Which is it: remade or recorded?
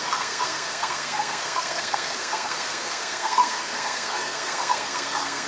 remade